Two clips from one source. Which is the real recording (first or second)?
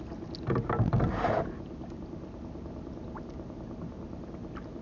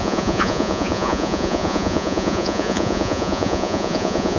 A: first